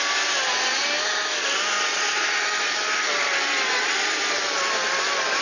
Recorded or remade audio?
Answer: recorded